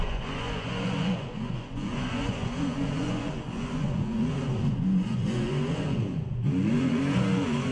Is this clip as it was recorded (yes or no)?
no